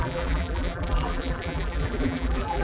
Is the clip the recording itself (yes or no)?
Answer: no